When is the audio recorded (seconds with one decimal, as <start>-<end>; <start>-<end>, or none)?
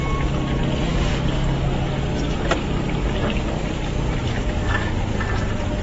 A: 0.0-0.9; 1.8-3.0; 3.6-4.3; 5.0-5.8